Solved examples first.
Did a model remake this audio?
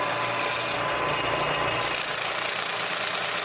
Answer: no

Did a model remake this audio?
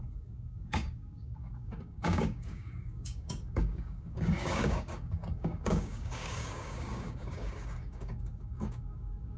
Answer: yes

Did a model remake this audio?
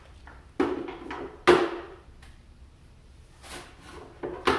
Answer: no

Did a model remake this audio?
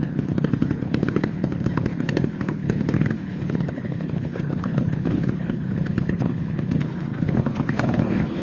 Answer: yes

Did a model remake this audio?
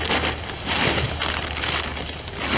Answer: no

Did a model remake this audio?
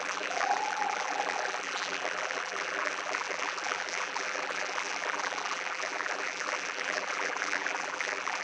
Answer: yes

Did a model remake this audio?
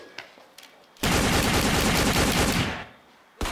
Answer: yes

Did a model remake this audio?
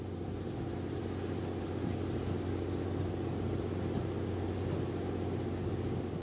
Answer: no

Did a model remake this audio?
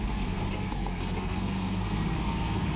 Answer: yes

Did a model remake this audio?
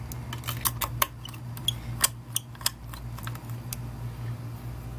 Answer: no